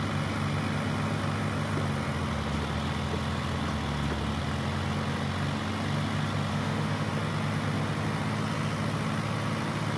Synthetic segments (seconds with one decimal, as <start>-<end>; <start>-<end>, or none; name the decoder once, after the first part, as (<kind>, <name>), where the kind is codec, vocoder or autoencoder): 6.5-7.1 (autoencoder, DAC-VAE)